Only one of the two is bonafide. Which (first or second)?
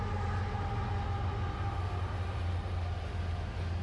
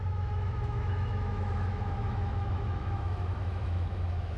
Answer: first